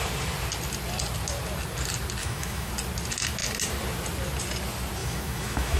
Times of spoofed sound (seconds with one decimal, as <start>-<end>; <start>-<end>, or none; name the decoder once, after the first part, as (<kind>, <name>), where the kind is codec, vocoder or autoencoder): 2.2-2.7 (autoencoder, DAC-VAE); 5.0-5.8